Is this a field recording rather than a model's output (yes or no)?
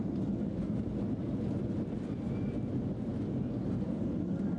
yes